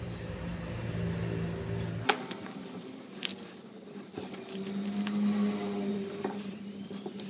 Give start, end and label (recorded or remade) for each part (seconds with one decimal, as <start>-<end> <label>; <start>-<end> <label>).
0.0-0.5 remade; 0.5-2.1 recorded; 2.1-3.3 remade; 3.3-5.9 recorded; 5.9-7.3 remade